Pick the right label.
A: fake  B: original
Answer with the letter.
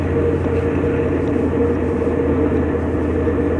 B